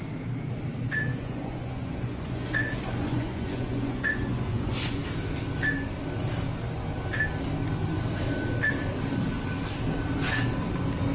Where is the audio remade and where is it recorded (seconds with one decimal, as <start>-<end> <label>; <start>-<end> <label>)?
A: 0.0-1.1 recorded; 1.1-5.0 remade; 5.0-11.1 recorded